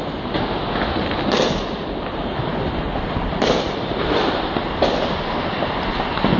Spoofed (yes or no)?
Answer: no